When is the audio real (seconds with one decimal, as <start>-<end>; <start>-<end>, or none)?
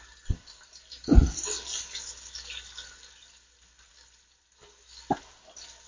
0.0-5.9